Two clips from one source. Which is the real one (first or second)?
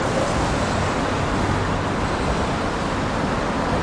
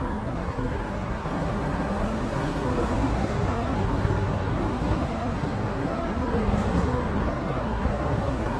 first